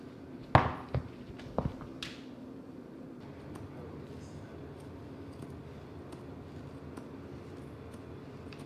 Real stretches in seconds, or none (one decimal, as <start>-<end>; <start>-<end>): 0.0-8.7